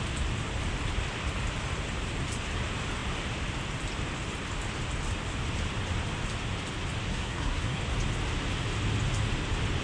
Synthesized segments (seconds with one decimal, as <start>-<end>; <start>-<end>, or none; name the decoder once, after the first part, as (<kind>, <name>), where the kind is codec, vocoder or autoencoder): 7.1-7.8 (codec, SNAC)